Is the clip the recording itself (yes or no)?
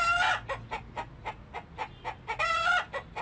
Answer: yes